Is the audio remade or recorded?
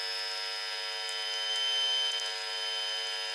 recorded